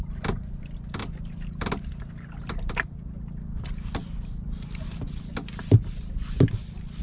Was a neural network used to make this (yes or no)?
no